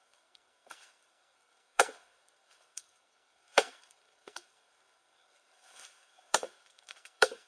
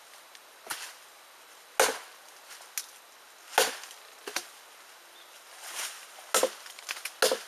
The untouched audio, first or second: second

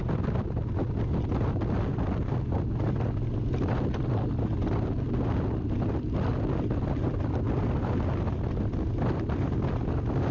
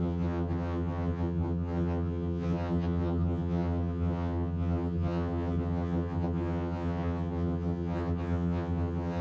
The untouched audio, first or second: first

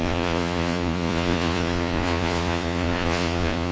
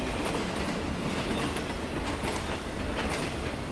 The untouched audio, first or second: second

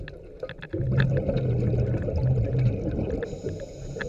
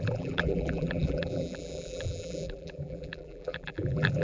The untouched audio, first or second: first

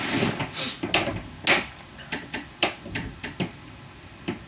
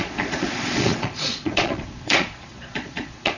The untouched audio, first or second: first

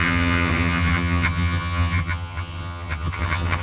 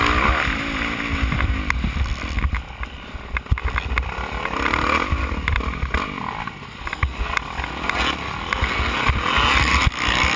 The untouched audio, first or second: second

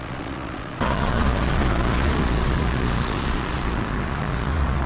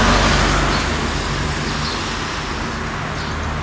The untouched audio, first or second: second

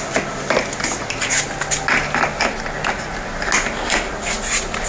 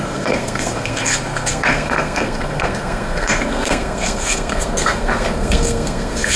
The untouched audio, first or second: first